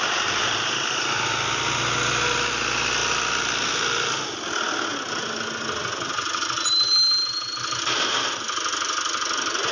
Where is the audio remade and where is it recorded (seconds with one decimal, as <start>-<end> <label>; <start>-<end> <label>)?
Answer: 0.0-3.0 recorded; 3.0-4.1 remade; 4.1-9.7 recorded